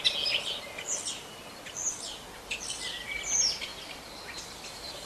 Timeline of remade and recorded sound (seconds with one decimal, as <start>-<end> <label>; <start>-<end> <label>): 0.0-5.1 recorded